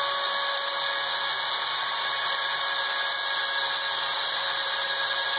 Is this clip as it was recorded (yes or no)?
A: yes